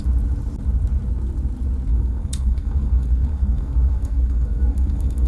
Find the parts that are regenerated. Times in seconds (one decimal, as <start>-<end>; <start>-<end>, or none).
1.9-5.3

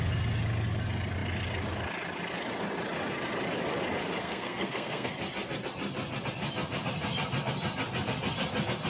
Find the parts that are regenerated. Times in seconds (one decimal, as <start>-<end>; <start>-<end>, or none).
4.2-5.1

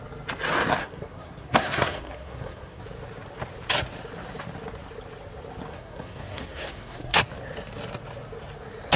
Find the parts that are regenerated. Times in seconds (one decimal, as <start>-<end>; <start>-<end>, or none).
0.8-2.8; 5.7-7.3

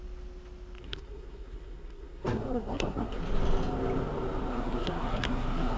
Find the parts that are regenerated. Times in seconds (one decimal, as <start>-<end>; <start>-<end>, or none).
0.8-3.2; 4.5-5.8

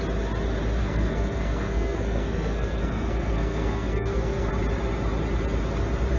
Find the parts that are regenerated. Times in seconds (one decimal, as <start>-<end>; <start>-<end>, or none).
0.8-4.5

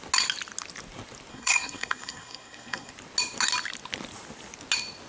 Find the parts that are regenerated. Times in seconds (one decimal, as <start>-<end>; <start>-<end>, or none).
1.3-2.9

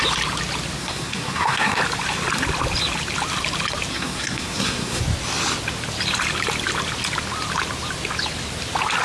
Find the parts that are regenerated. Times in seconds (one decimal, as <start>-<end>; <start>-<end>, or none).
0.8-1.8; 3.9-5.0